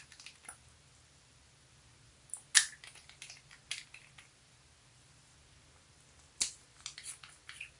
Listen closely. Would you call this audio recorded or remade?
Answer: recorded